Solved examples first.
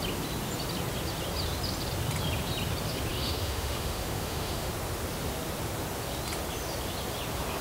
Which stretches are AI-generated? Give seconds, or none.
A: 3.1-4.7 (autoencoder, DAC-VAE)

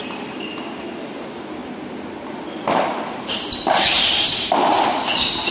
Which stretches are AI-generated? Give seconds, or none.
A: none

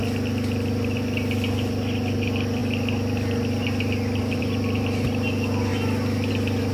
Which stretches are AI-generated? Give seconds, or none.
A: none